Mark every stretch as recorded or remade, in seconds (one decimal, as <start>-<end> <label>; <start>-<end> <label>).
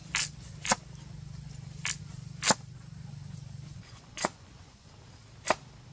0.0-3.7 recorded; 3.7-4.9 remade; 4.9-5.9 recorded